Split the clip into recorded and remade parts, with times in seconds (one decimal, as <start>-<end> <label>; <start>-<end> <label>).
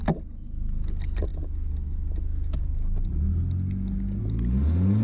0.0-5.0 recorded